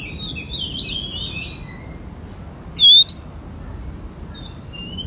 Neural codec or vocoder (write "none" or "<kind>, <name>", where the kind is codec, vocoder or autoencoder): none